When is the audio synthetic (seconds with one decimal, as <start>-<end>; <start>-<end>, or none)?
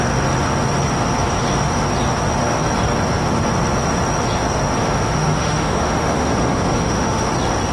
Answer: 4.8-7.3